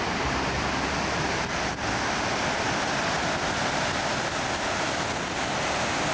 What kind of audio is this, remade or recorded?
recorded